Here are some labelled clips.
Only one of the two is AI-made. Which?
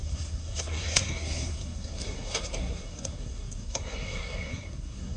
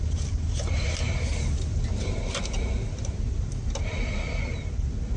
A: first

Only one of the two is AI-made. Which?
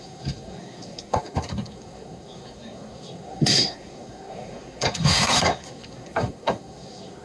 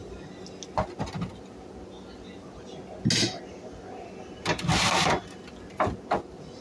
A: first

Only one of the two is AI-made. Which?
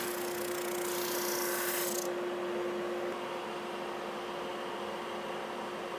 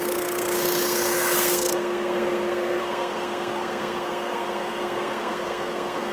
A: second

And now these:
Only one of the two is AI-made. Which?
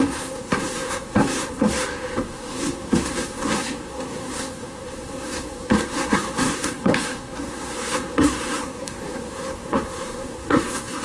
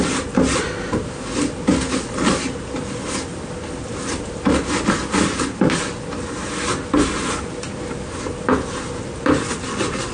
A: first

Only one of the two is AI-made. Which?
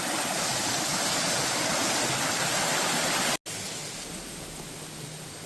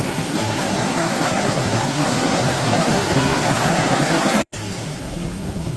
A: second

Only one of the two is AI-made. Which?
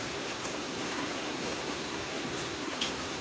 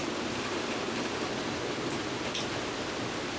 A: first